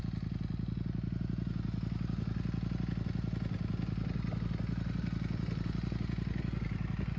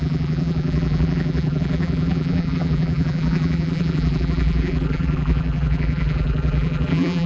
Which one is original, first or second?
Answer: first